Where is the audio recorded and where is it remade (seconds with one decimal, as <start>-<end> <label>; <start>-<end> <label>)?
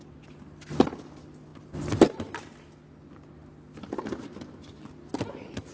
0.0-5.7 recorded